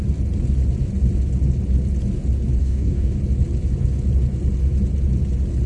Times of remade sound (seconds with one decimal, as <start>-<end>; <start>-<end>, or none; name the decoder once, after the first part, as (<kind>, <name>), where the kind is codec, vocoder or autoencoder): 2.6-3.2 (codec, DAC)